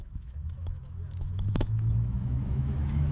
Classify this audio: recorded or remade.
remade